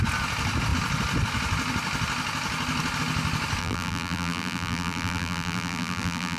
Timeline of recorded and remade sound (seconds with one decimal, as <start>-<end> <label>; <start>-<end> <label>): 0.0-3.6 recorded; 3.6-6.4 remade